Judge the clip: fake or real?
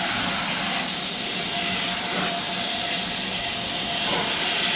real